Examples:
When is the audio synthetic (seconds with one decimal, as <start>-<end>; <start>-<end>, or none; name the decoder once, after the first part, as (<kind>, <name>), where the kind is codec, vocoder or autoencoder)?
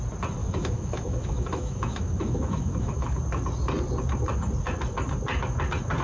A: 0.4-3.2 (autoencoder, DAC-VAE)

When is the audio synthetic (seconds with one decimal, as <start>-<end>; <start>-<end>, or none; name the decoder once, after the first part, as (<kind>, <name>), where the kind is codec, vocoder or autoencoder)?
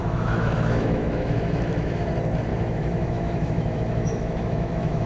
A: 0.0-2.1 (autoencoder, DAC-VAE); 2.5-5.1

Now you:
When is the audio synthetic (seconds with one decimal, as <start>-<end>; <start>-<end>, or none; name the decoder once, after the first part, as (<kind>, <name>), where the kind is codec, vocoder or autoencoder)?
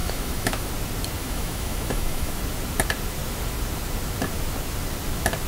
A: 0.0-0.7 (autoencoder, DAC-VAE); 1.2-2.4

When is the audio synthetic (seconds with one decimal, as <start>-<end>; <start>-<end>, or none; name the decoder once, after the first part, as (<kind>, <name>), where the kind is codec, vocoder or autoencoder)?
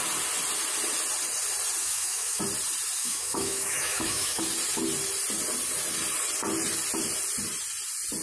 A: 1.8-2.4 (autoencoder, DAC-VAE); 3.0-4.4